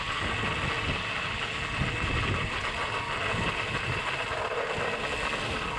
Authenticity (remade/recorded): recorded